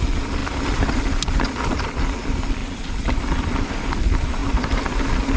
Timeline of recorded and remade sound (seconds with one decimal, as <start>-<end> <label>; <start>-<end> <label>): 0.0-0.4 recorded; 0.4-1.0 remade; 1.0-2.6 recorded; 2.6-3.2 remade; 3.2-5.4 recorded